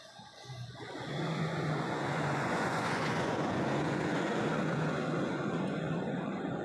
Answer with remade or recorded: remade